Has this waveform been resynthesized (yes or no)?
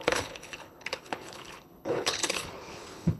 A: yes